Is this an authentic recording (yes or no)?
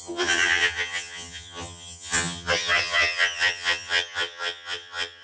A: no